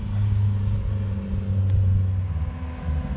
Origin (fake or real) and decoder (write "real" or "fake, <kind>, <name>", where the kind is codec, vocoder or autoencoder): real